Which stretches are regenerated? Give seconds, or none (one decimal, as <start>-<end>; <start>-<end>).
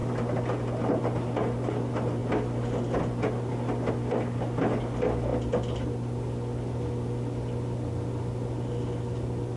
none